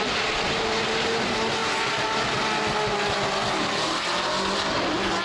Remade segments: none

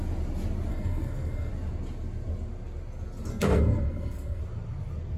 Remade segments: 0.7-1.5 (codec, SNAC); 3.3-4.4

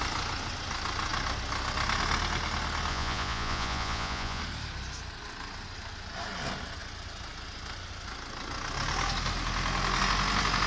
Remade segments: 2.9-4.4 (vocoder, Vocos)

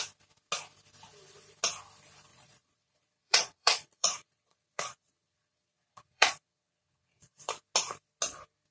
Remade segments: 2.3-7.5 (vocoder, Vocos)

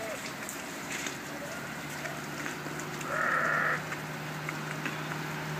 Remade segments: 0.0-1.5 (vocoder, BigVGAN v2)

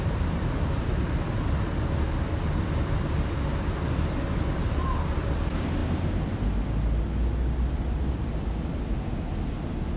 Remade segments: none

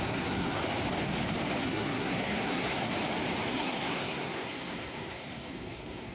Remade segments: 0.0-0.6 (codec, SNAC); 1.6-3.0; 3.5-6.1